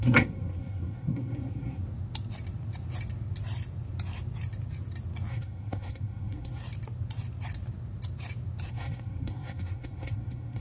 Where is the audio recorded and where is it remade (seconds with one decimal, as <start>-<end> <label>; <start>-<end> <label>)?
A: 0.0-1.8 remade; 1.8-5.3 recorded; 5.3-6.6 remade; 6.6-8.7 recorded; 8.7-10.6 remade

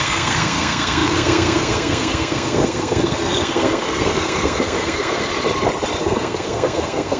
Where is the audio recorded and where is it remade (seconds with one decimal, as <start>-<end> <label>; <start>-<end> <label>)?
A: 0.0-5.3 remade; 5.3-6.0 recorded; 6.0-7.2 remade

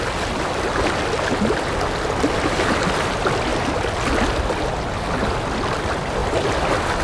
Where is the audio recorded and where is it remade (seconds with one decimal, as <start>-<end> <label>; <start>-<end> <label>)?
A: 0.0-7.0 recorded